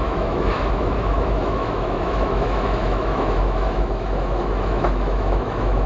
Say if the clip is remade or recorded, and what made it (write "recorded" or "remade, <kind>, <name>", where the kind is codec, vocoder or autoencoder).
remade, autoencoder, DAC-VAE